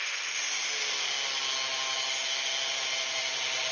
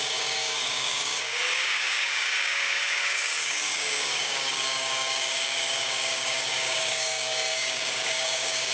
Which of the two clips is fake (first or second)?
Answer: second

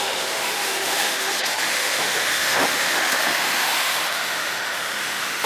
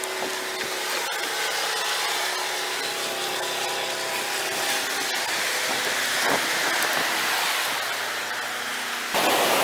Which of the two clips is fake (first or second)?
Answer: first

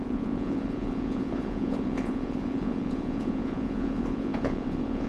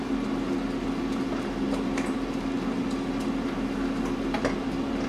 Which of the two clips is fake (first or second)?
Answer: first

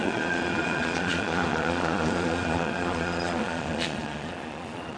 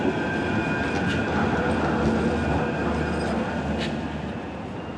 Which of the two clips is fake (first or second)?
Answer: first